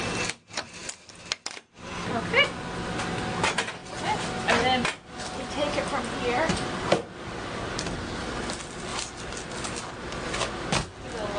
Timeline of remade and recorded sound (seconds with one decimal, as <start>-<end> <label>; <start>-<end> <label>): 0.0-11.4 recorded

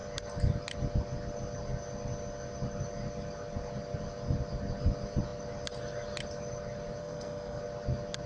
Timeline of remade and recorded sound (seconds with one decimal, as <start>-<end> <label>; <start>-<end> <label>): 0.0-7.0 recorded; 7.0-7.6 remade; 7.6-8.3 recorded

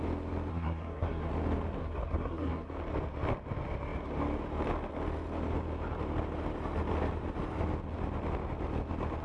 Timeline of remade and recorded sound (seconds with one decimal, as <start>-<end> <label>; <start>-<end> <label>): 0.0-0.5 recorded; 0.5-1.3 remade; 1.3-1.8 recorded; 1.8-2.7 remade; 2.7-9.2 recorded

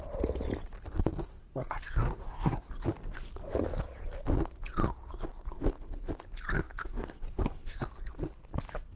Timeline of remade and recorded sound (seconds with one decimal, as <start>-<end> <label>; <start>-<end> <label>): 0.0-1.3 recorded; 1.3-2.7 remade; 2.7-6.8 recorded; 6.8-7.8 remade; 7.8-9.0 recorded

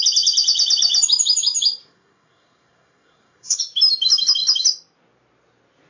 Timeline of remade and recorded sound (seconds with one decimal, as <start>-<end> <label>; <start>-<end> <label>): 0.0-1.8 recorded; 1.8-3.6 remade; 3.6-5.9 recorded

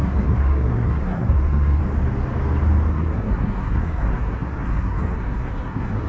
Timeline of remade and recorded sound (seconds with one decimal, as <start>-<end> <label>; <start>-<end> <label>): 0.0-1.8 remade; 1.8-2.9 recorded; 2.9-6.1 remade